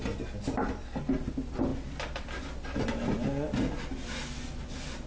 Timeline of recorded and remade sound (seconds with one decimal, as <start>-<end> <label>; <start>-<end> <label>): 0.0-5.1 recorded